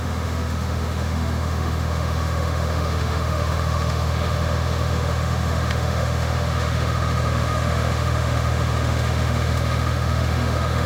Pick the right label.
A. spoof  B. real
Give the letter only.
A